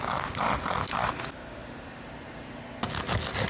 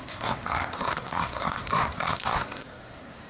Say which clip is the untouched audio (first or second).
first